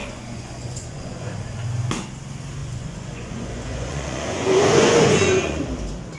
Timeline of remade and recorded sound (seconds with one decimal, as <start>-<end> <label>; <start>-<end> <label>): 0.0-1.3 remade; 1.3-2.6 recorded; 2.6-5.6 remade; 5.6-6.2 recorded